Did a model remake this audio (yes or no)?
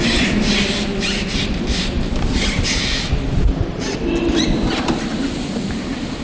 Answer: no